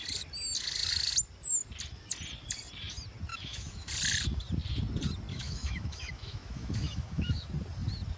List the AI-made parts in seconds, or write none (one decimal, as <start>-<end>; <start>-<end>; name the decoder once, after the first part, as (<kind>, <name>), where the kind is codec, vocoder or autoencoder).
3.3-3.9 (autoencoder, DAC-VAE); 5.3-7.5